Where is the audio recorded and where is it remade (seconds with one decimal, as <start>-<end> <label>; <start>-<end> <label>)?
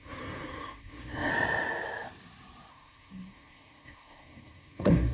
0.0-1.3 remade; 1.3-2.7 recorded; 2.7-5.1 remade